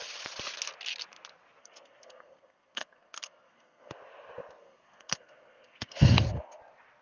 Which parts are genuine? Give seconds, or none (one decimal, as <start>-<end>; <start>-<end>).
0.0-1.6; 3.9-4.6; 6.6-7.0